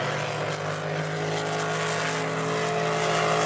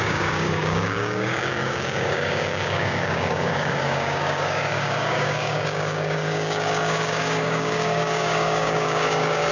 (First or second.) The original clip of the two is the first